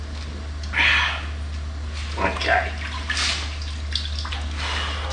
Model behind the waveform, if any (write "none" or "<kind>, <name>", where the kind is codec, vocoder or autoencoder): none